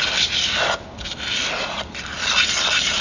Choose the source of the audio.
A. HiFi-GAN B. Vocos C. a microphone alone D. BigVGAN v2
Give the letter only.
C